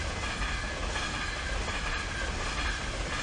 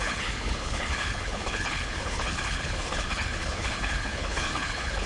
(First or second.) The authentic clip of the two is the first